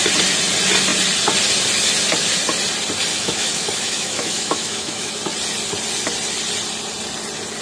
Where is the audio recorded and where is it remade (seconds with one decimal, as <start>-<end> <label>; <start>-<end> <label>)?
0.0-3.1 recorded; 3.1-5.1 remade; 5.1-7.6 recorded